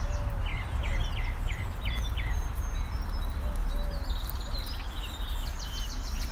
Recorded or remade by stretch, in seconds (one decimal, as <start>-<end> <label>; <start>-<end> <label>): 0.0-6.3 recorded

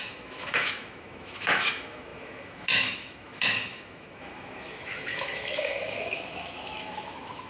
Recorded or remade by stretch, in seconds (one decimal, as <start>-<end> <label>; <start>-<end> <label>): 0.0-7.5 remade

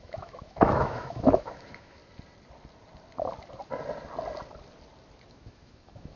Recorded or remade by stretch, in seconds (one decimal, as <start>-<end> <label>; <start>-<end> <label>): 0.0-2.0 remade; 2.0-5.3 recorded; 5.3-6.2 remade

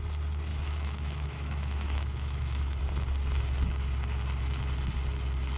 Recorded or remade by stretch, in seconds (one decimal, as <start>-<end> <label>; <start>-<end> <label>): 0.0-0.5 recorded; 0.5-2.8 remade; 2.8-5.6 recorded

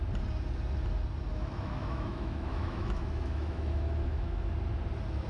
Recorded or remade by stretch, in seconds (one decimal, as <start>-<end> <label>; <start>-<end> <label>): 0.0-1.3 recorded; 1.3-4.5 remade; 4.5-5.3 recorded

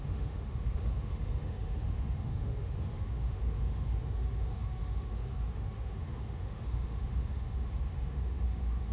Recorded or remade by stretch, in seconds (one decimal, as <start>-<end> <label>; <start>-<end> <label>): 0.0-8.9 remade